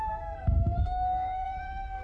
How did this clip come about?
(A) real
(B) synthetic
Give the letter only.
B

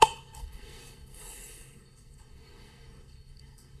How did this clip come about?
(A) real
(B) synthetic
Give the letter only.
B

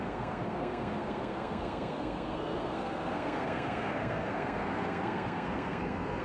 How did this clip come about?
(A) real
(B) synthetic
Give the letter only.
B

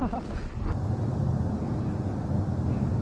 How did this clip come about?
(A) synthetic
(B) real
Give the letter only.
B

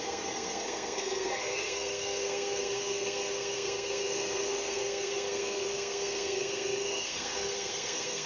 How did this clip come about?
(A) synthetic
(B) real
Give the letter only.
A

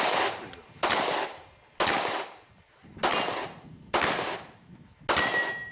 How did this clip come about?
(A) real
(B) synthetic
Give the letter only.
A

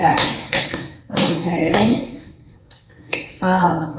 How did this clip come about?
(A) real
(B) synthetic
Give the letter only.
B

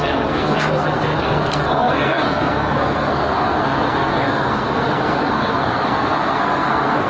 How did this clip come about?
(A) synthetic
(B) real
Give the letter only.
A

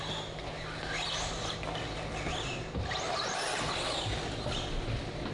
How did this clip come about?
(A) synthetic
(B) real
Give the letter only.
B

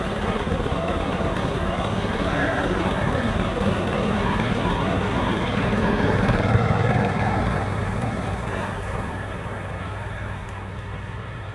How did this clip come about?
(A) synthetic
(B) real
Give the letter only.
A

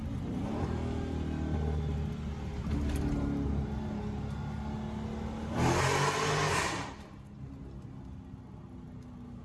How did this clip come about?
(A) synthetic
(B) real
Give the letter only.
B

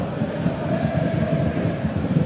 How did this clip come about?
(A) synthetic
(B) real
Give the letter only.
B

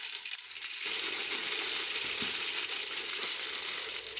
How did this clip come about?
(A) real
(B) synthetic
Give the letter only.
A